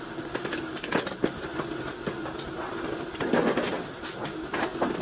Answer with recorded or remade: recorded